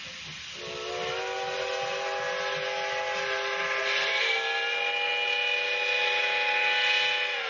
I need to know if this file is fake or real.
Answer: real